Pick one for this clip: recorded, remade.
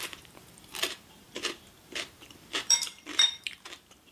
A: remade